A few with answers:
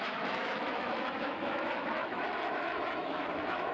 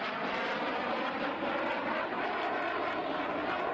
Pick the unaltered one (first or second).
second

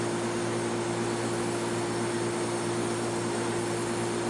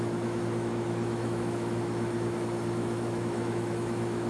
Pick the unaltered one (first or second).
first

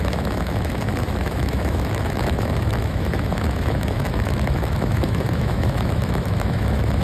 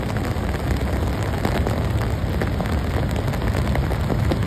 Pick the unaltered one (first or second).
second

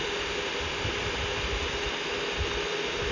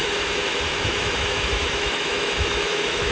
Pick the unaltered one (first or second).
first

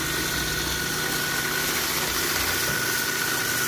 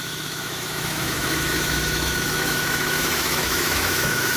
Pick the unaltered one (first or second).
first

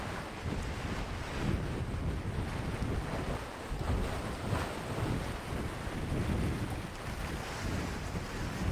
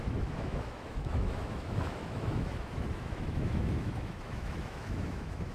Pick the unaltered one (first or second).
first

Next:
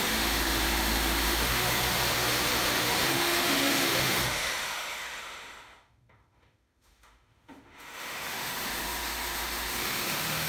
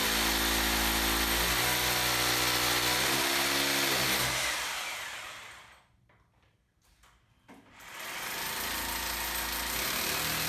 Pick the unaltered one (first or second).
second